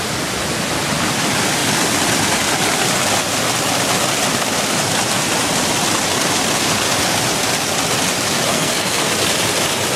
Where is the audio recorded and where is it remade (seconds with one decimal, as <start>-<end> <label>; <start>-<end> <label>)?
0.0-8.5 recorded; 8.5-9.1 remade; 9.1-10.0 recorded

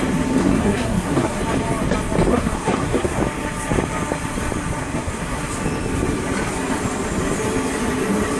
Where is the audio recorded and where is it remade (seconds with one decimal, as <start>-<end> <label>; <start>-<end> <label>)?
0.0-0.4 recorded; 0.4-1.4 remade; 1.4-2.3 recorded; 2.3-3.2 remade; 3.2-4.8 recorded; 4.8-5.4 remade; 5.4-8.4 recorded